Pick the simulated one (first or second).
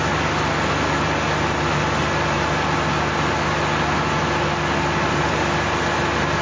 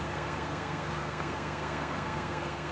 second